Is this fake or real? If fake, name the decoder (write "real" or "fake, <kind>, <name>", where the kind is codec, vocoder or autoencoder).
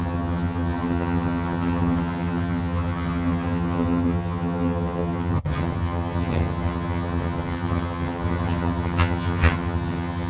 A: fake, vocoder, HiFi-GAN